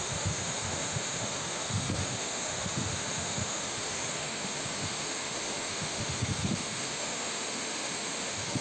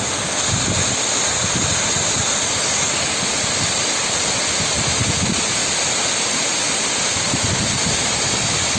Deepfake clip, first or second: first